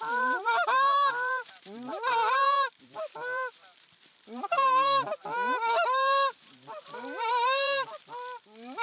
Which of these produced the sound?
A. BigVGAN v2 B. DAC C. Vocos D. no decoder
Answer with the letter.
A